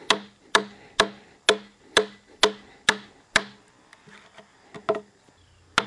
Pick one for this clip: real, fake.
real